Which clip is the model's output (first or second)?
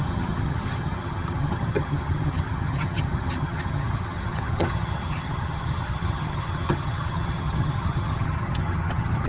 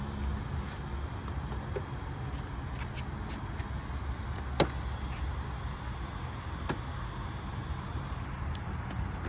first